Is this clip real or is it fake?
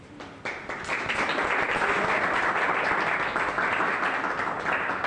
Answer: real